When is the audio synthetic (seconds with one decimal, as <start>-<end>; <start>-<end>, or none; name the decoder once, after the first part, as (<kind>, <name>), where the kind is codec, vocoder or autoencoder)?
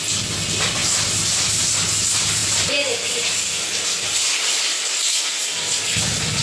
0.8-1.5 (vocoder, BigVGAN v2); 2.4-4.8; 5.4-6.4